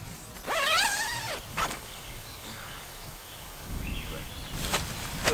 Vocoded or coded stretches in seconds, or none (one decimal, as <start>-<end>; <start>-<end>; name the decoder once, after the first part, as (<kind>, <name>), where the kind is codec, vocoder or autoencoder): 1.5-4.3 (codec, DAC)